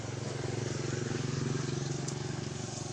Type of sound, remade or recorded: remade